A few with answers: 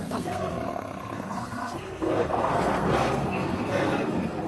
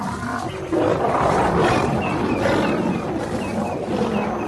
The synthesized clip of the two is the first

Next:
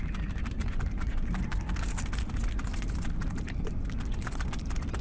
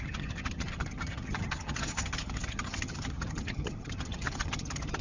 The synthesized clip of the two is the second